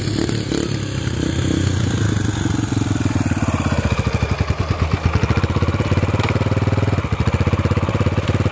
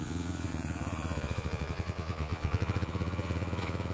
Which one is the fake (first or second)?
second